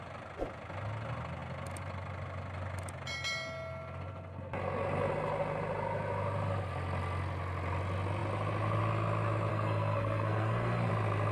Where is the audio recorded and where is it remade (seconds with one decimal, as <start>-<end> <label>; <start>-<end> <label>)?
0.0-9.5 recorded; 9.5-10.9 remade; 10.9-11.3 recorded